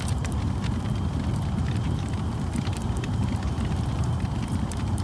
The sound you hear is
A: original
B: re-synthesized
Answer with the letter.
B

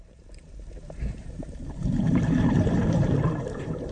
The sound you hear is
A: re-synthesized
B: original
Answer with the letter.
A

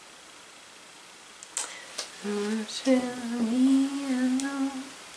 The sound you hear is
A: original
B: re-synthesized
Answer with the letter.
A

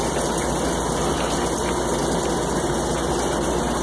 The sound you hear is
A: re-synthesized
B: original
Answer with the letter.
B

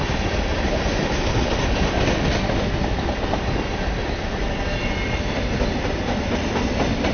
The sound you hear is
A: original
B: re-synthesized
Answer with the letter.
A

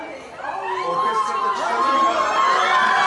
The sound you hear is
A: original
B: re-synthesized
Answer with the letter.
A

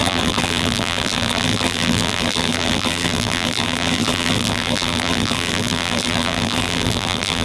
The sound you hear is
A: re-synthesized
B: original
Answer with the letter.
A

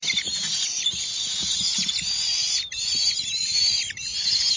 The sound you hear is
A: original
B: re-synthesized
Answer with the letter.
B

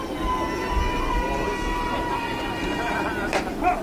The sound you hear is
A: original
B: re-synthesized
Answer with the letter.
A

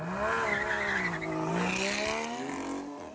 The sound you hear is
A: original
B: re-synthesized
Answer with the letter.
A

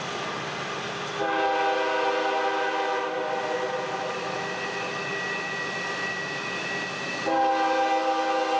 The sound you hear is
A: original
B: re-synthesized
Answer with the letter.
A